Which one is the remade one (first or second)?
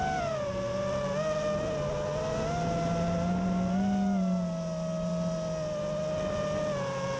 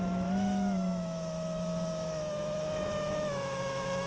second